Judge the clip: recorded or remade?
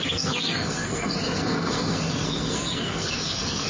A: remade